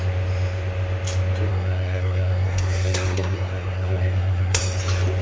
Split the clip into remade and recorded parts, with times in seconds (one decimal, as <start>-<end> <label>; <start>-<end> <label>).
0.0-1.5 recorded; 1.5-4.6 remade; 4.6-5.2 recorded